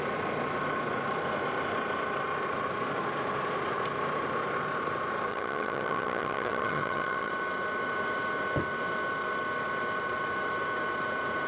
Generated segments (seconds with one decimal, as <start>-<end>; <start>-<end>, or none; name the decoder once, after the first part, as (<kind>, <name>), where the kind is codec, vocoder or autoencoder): 5.3-7.3 (vocoder, HiFi-GAN)